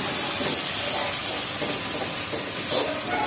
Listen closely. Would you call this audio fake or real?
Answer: real